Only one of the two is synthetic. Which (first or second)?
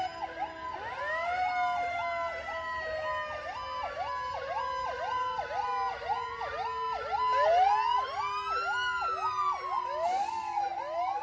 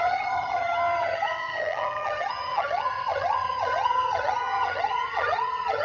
second